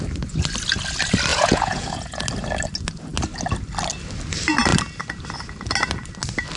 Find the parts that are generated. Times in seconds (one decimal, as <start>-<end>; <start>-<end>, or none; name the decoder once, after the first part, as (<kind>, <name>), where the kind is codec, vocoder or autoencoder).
1.3-2.2 (vocoder, Vocos)